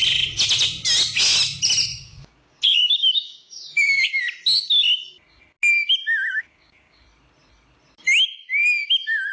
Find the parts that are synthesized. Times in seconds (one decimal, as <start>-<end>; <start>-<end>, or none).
1.9-4.2; 6.3-7.0